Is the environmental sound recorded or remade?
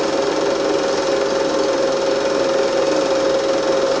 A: recorded